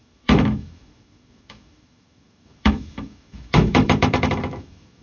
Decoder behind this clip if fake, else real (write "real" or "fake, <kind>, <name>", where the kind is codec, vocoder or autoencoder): fake, autoencoder, DAC-VAE